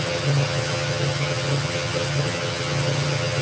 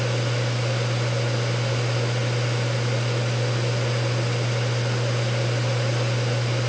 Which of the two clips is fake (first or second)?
first